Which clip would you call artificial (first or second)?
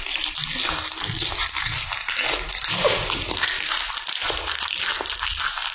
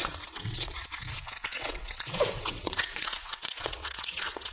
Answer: second